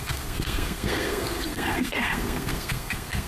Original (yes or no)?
no